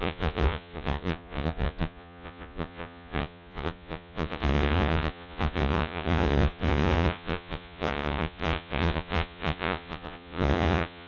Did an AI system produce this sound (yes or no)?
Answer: yes